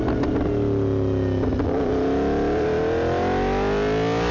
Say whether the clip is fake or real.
real